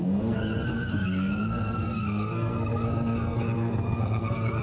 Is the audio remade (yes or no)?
yes